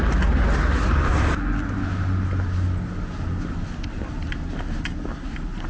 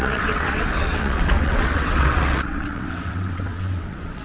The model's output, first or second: second